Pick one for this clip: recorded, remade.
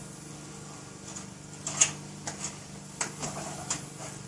recorded